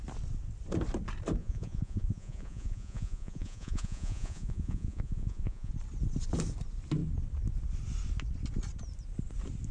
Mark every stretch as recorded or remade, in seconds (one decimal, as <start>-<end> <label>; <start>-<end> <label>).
0.0-1.4 recorded; 1.4-5.7 remade; 5.7-9.7 recorded